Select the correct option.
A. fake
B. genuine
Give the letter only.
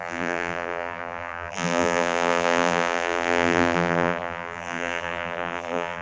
A